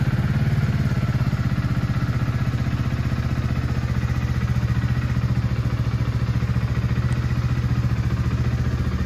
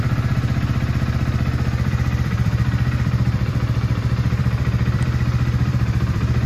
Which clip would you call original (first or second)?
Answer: first